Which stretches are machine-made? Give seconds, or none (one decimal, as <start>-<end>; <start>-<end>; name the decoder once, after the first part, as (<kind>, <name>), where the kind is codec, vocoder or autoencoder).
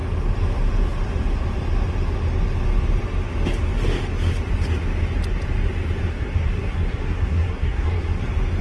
6.1-8.2 (codec, SNAC)